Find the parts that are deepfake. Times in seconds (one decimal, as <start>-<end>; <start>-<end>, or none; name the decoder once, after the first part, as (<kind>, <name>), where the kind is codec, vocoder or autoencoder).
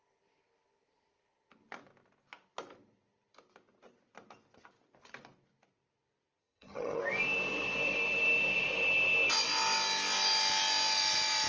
6.4-7.0 (vocoder, HiFi-GAN)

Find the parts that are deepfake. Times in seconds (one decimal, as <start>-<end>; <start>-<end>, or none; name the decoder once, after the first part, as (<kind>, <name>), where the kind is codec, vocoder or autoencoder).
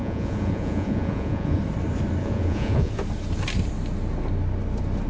0.0-1.6 (vocoder, Vocos); 2.2-2.9